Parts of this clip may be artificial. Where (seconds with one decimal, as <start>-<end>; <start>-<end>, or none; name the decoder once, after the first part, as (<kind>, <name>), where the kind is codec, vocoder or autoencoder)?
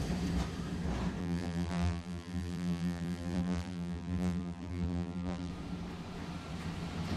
1.2-5.5 (vocoder, BigVGAN v2)